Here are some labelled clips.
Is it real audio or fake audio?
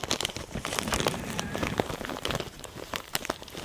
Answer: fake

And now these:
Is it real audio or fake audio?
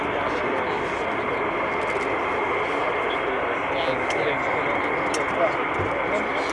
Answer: real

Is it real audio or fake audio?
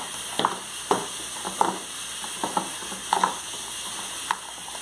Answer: real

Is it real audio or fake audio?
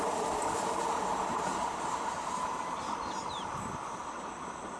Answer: real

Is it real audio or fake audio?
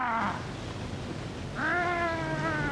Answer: real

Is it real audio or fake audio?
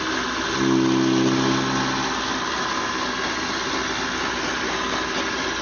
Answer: real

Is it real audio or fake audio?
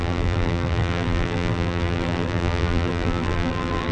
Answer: fake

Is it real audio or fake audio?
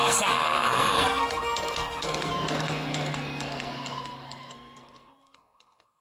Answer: fake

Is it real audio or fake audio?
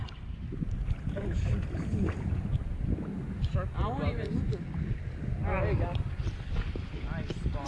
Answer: real